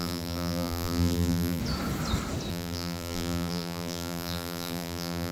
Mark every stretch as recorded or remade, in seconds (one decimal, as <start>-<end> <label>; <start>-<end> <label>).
0.0-1.6 remade; 1.6-2.5 recorded; 2.5-5.3 remade